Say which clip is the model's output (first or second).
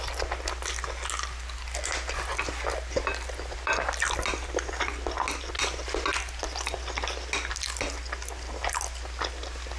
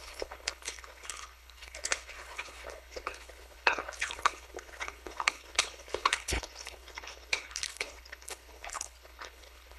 second